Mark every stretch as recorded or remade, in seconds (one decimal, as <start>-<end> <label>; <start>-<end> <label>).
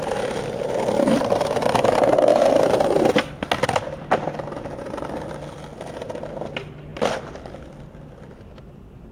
0.0-6.9 recorded; 6.9-8.3 remade; 8.3-9.1 recorded